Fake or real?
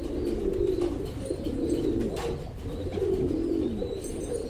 real